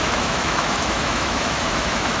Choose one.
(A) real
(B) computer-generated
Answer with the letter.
B